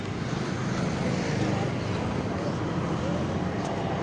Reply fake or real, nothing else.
real